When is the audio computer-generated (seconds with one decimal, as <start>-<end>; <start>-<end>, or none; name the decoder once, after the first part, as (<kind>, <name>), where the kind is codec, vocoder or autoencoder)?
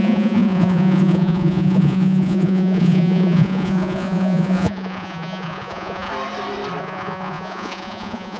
0.0-6.1 (vocoder, Vocos); 6.8-8.4